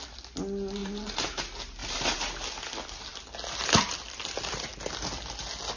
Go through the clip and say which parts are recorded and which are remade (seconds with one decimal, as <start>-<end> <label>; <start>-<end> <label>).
0.0-0.8 recorded; 0.8-1.4 remade; 1.4-1.8 recorded; 1.8-2.6 remade; 2.6-5.8 recorded